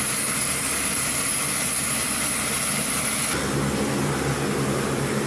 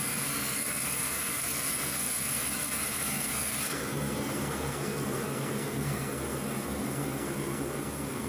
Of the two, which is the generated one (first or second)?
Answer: second